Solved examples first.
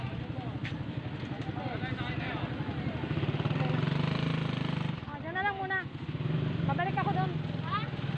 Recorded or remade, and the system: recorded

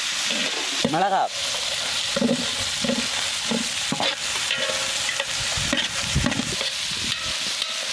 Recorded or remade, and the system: recorded